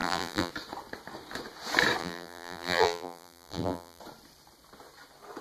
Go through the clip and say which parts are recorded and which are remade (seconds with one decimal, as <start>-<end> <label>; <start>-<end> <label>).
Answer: 0.0-0.5 remade; 0.5-2.0 recorded; 2.0-4.0 remade; 4.0-5.4 recorded

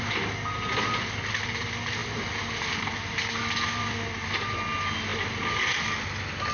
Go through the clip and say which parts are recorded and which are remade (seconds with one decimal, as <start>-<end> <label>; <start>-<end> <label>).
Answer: 0.0-6.5 recorded

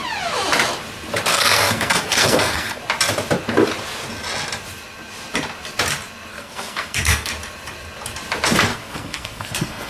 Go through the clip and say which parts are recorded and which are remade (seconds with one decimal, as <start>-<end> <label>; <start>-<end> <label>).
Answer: 0.0-1.3 recorded; 1.3-2.8 remade; 2.8-6.3 recorded; 6.3-7.3 remade; 7.3-8.7 recorded; 8.7-9.9 remade

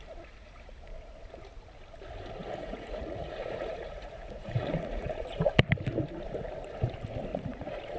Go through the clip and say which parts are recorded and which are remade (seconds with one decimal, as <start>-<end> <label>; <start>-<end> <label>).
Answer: 0.0-2.4 recorded; 2.4-5.6 remade; 5.6-7.3 recorded; 7.3-8.0 remade

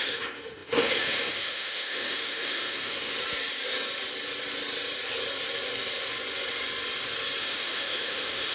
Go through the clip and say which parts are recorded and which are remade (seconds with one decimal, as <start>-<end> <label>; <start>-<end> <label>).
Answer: 0.0-3.1 remade; 3.1-7.4 recorded; 7.4-8.5 remade

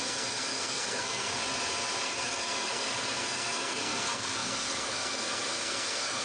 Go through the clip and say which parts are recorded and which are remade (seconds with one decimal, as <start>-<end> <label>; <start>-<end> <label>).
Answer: 0.0-1.4 remade; 1.4-2.0 recorded; 2.0-6.2 remade